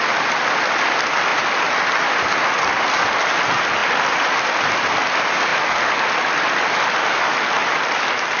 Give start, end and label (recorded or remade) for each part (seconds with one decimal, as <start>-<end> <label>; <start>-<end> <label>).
0.0-1.3 recorded; 1.3-1.8 remade; 1.8-3.8 recorded; 3.8-4.6 remade; 4.6-5.5 recorded; 5.5-7.3 remade; 7.3-8.4 recorded

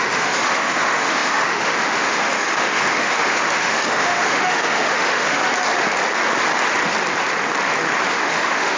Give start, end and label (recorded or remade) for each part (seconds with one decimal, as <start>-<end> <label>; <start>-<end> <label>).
0.0-5.4 remade; 5.4-8.1 recorded; 8.1-8.8 remade

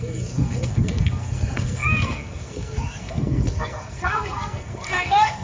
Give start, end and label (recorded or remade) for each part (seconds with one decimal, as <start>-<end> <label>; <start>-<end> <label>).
0.0-5.4 remade

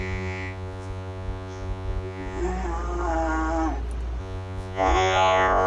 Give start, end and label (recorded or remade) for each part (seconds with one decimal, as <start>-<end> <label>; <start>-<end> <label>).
0.0-2.4 remade; 2.4-4.2 recorded; 4.2-5.7 remade